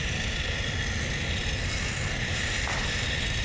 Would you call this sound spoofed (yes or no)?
no